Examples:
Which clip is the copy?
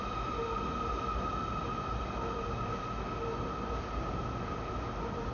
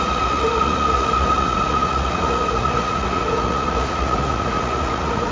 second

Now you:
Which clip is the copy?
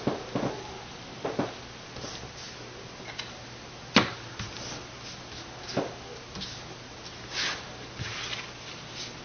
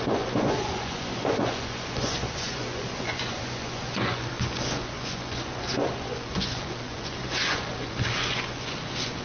second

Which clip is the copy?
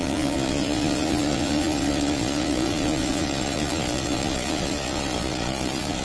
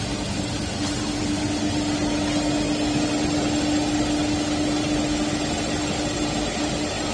first